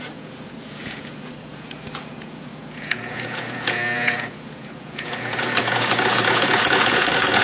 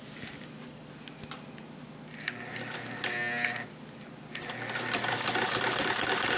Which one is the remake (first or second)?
first